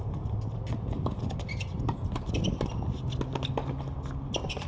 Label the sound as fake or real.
real